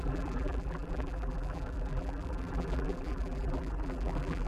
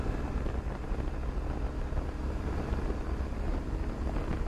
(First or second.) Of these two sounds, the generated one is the first